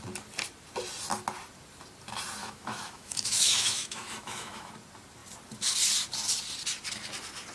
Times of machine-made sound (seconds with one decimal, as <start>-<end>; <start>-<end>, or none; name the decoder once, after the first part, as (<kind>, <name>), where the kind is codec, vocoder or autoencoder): 2.4-4.7 (autoencoder, DAC-VAE)